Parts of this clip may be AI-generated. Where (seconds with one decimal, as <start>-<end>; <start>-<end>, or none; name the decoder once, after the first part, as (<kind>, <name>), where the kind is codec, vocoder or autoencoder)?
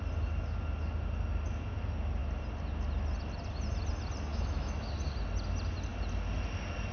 4.3-4.9 (autoencoder, DAC-VAE)